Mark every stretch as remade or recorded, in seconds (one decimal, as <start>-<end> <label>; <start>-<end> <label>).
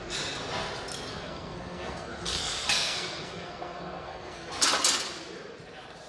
0.0-1.1 recorded; 1.1-4.5 remade; 4.5-6.1 recorded